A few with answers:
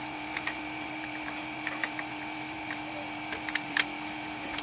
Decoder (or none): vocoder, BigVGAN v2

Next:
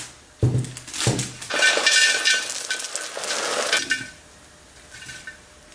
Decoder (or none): none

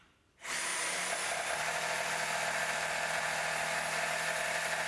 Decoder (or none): none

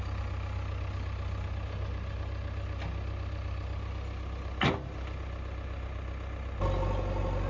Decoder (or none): none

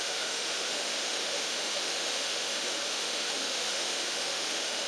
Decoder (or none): autoencoder, DAC-VAE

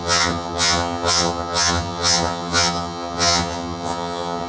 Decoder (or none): vocoder, HiFi-GAN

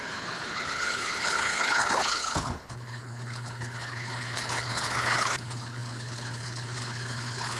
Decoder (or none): codec, HILCodec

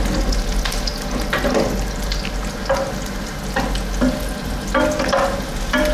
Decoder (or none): none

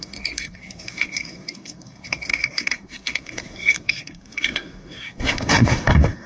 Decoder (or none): codec, SNAC